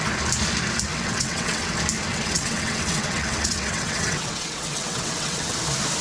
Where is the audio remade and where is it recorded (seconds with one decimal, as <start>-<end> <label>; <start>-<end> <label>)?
0.0-0.9 recorded; 0.9-1.7 remade; 1.7-2.1 recorded; 2.1-5.6 remade; 5.6-6.0 recorded